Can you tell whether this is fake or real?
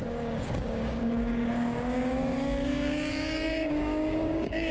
fake